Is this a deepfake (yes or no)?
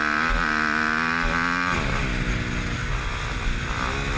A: no